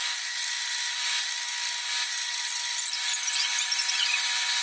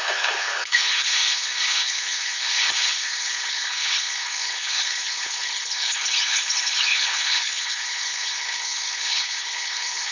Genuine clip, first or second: first